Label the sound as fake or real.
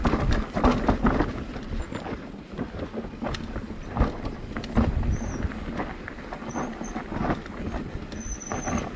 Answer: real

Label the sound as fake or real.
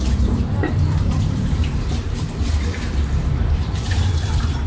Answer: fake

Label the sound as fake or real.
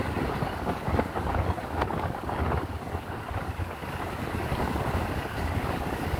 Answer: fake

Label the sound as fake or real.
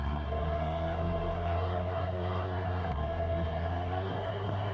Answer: fake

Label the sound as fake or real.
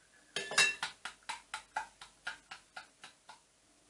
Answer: real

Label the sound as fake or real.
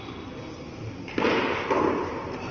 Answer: real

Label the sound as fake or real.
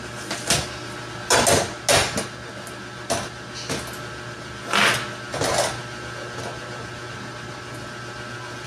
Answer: real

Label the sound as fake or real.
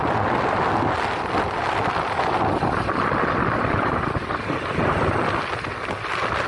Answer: real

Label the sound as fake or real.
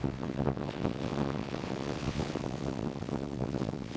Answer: fake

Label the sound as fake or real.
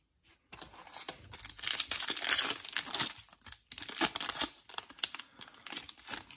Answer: real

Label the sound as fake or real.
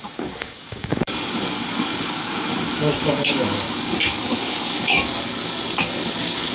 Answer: fake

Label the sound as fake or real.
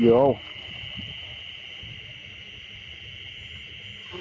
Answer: real